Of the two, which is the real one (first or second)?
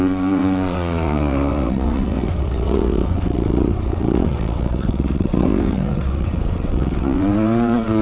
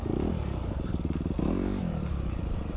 second